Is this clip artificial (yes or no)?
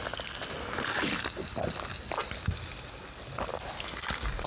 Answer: no